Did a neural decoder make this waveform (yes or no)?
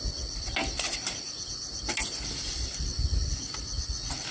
no